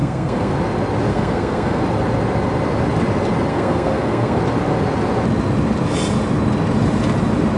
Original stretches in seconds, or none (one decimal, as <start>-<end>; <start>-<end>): 0.5-1.1; 1.8-3.5; 4.4-7.6